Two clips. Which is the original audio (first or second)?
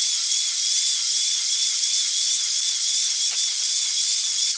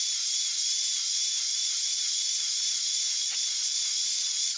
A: first